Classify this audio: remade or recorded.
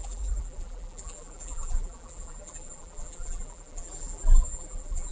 remade